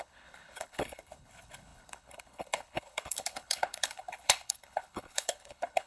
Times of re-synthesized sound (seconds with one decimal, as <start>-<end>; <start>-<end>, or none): 0.0-5.9

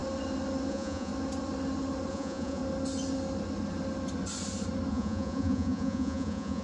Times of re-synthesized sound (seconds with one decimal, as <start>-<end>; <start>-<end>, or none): 0.7-1.1; 2.1-2.6; 4.9-6.6